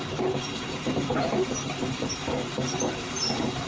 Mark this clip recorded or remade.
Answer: remade